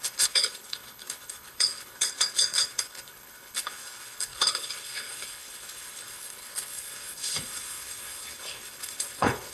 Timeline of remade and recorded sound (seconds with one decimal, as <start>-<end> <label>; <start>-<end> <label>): 0.0-9.5 remade